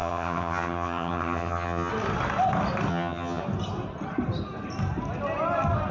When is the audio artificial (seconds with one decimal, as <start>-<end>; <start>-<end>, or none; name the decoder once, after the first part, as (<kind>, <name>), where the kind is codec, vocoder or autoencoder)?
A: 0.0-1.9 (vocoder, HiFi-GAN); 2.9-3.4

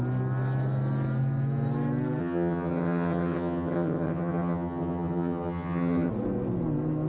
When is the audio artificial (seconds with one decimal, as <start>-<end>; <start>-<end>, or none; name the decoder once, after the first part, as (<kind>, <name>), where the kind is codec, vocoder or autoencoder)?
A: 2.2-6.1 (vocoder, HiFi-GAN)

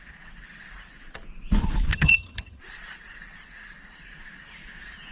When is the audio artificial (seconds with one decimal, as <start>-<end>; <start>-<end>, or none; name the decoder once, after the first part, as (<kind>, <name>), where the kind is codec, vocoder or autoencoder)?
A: 1.9-2.6 (vocoder, HiFi-GAN)

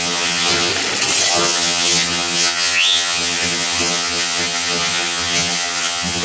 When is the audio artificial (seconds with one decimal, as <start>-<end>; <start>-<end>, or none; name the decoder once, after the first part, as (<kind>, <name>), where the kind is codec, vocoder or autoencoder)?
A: 0.0-0.7 (vocoder, HiFi-GAN); 1.3-6.2

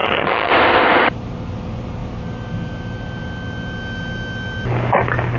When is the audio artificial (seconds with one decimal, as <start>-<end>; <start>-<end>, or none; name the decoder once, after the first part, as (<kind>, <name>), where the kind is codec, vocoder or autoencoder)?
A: 0.0-0.5 (vocoder, HiFi-GAN)

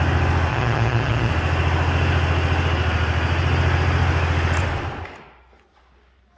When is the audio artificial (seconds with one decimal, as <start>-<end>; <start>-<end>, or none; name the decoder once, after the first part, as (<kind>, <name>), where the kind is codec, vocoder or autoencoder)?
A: 0.5-1.3 (vocoder, HiFi-GAN)